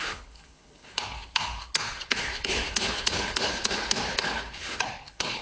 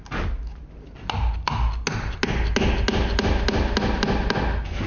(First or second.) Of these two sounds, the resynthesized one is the first